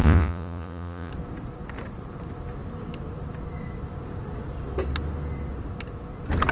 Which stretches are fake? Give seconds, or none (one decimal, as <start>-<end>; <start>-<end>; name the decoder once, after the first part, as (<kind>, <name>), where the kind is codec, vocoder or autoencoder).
0.0-1.1 (vocoder, Vocos)